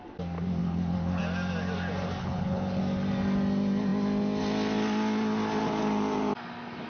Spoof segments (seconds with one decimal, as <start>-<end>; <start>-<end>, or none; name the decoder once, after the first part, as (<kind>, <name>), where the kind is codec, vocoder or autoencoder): 0.6-1.2 (codec, HILCodec); 2.2-2.8